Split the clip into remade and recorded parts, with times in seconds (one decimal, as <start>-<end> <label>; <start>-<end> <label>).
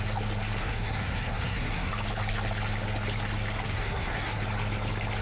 0.0-0.6 recorded; 0.6-1.9 remade; 1.9-3.7 recorded; 3.7-4.4 remade; 4.4-5.2 recorded